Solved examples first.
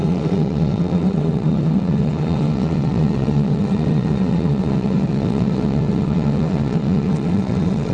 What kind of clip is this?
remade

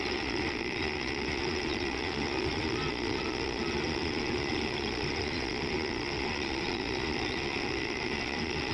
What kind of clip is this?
remade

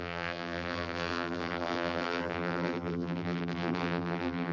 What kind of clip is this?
remade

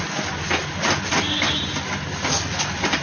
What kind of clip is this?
recorded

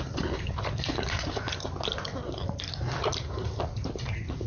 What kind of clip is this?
recorded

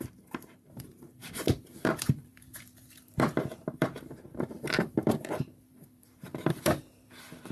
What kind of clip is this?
remade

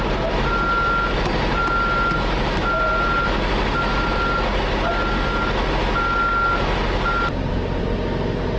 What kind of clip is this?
recorded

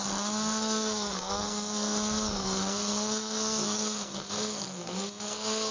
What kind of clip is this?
remade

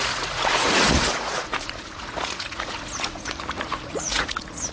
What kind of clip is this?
remade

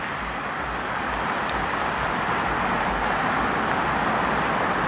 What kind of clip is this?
recorded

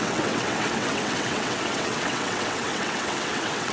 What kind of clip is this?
remade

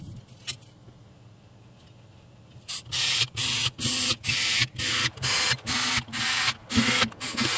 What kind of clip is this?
recorded